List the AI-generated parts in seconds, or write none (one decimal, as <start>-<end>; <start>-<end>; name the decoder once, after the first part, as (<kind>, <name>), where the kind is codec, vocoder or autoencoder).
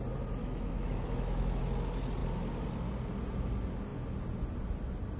0.4-1.6 (autoencoder, DAC-VAE)